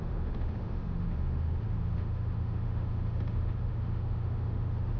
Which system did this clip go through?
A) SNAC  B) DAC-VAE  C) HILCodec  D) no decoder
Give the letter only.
B